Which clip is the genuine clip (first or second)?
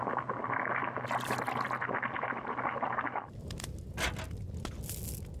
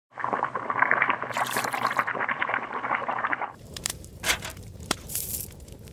first